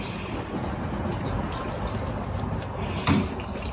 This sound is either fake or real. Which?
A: real